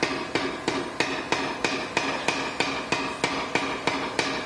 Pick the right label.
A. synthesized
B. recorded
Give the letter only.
B